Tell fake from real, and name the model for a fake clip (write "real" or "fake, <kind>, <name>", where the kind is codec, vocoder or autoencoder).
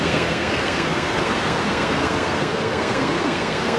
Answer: fake, codec, SNAC